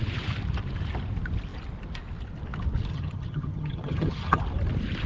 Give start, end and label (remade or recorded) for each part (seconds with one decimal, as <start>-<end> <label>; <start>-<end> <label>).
0.0-2.9 recorded; 2.9-4.4 remade; 4.4-5.1 recorded

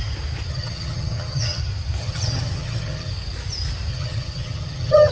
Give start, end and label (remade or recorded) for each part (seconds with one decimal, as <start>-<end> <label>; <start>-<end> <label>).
0.0-0.5 recorded; 0.5-1.6 remade; 1.6-2.0 recorded; 2.0-3.1 remade; 3.1-3.9 recorded; 3.9-5.1 remade

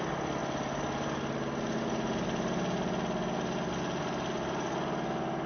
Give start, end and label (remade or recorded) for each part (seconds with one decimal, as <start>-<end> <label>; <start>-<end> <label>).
0.0-5.5 recorded

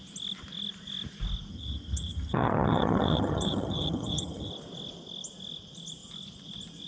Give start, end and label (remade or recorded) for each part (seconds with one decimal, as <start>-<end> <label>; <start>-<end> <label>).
0.0-1.5 recorded; 1.5-4.5 remade; 4.5-6.9 recorded

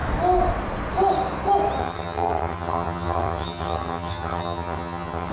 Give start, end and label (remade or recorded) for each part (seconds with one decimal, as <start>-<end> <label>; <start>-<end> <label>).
0.0-1.8 recorded; 1.8-5.3 remade